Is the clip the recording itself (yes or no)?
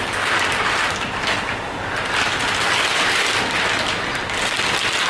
yes